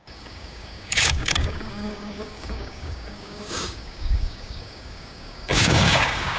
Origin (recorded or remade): remade